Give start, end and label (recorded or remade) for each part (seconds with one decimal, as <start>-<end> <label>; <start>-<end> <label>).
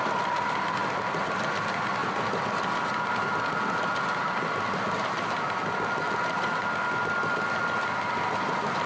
0.0-8.9 recorded